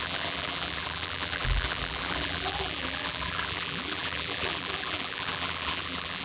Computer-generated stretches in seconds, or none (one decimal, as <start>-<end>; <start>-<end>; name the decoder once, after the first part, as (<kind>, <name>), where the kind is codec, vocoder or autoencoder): 0.0-6.2 (vocoder, BigVGAN v2)

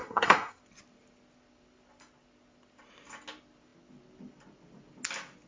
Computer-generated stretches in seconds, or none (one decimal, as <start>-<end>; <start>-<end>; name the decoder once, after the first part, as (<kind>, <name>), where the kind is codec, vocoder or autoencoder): 0.0-0.6 (codec, SNAC)

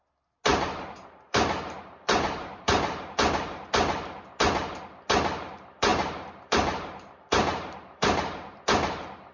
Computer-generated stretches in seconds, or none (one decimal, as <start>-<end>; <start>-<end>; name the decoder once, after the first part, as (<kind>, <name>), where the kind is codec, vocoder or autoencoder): 0.5-3.0 (vocoder, BigVGAN v2); 5.9-8.6

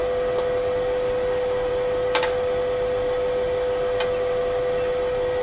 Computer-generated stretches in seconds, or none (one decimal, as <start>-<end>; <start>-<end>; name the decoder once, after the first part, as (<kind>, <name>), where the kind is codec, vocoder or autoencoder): none

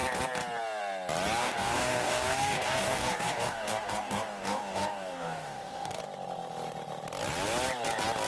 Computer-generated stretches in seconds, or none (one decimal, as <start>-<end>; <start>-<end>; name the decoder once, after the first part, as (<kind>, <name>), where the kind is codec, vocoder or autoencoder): 1.4-6.0 (codec, DAC)

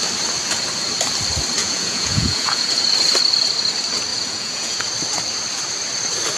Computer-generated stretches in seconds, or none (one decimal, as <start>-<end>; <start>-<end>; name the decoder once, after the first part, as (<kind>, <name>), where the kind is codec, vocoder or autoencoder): 1.6-2.8 (vocoder, Vocos); 4.1-4.8

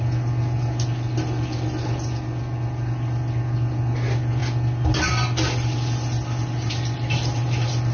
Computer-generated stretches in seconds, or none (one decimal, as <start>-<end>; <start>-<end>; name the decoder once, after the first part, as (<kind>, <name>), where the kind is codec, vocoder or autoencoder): none

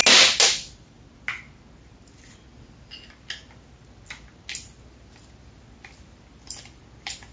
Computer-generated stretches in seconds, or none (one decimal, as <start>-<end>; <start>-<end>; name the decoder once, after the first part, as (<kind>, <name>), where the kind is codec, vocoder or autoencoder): none